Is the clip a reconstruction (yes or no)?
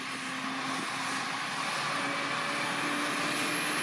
no